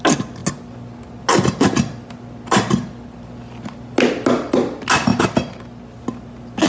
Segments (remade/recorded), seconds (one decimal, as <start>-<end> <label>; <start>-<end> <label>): 0.0-6.7 recorded